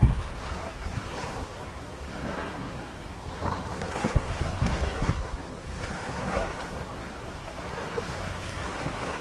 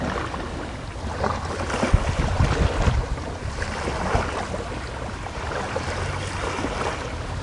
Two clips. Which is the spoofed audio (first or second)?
first